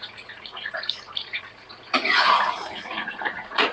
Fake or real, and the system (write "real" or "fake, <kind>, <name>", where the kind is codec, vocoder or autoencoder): fake, vocoder, Vocos